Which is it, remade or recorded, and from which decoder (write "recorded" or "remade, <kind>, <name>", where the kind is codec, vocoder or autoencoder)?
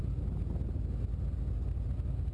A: recorded